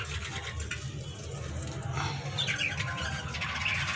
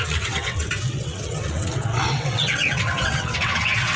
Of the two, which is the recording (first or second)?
first